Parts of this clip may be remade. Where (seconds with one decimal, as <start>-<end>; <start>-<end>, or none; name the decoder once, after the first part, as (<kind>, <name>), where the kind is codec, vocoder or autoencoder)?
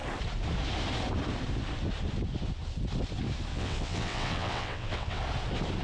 3.5-5.2 (vocoder, WaveNeXt)